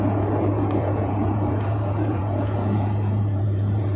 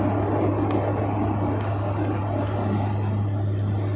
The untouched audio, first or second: second